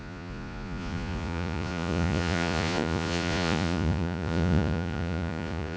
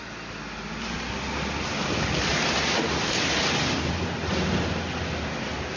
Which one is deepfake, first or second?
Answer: first